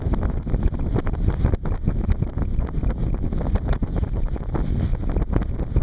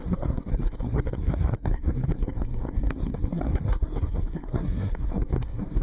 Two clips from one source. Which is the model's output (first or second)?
second